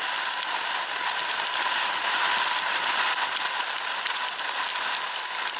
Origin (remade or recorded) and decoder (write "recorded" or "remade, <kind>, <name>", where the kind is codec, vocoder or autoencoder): recorded